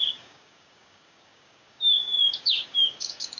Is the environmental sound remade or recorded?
remade